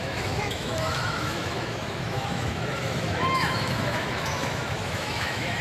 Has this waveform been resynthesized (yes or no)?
yes